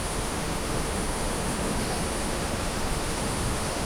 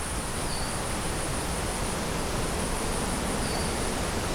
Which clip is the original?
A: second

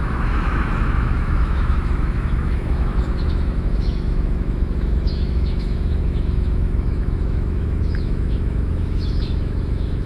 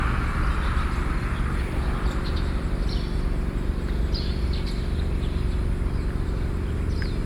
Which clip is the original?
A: second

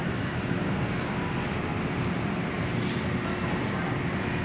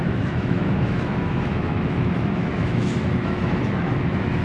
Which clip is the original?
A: first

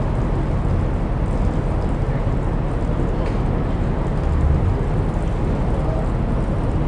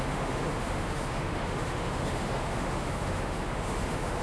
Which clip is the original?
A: first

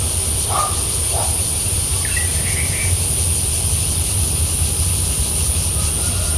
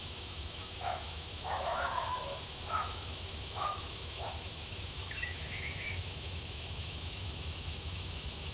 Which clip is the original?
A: first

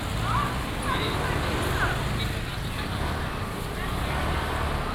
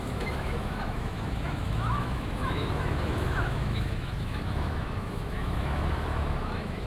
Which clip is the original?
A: first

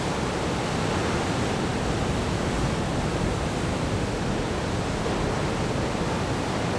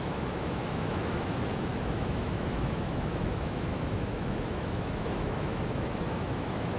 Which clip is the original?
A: first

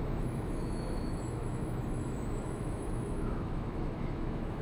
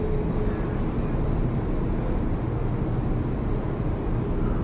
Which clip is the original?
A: second